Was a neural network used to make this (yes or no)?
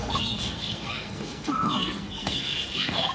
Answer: yes